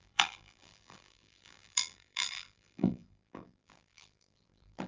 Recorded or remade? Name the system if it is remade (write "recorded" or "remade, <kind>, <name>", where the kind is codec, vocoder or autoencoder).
remade, vocoder, BigVGAN v2